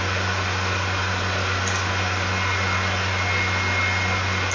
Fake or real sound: real